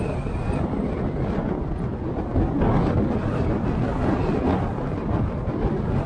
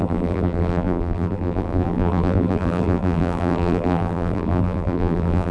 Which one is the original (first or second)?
first